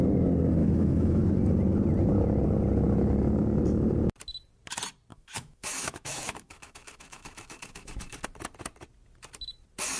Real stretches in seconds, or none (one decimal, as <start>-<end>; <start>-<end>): 0.0-0.6; 1.2-5.1; 8.2-10.0